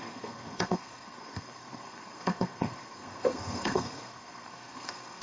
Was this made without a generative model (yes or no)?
no